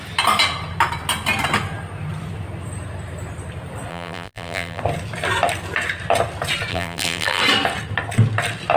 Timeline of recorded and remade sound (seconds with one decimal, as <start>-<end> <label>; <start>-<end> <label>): 0.0-3.9 recorded; 3.9-4.8 remade; 4.8-6.7 recorded; 6.7-7.4 remade; 7.4-8.8 recorded